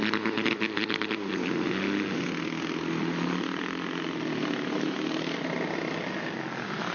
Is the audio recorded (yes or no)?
yes